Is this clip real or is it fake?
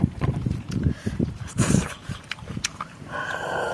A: fake